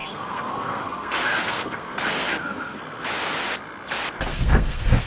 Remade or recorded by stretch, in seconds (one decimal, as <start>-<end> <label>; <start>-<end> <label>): 0.0-2.8 remade; 2.8-4.3 recorded; 4.3-5.1 remade